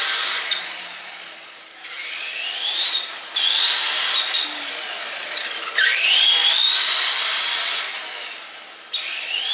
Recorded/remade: recorded